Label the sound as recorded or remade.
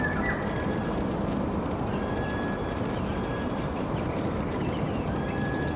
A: recorded